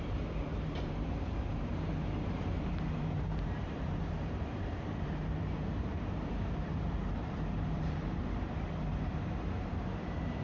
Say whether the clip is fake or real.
fake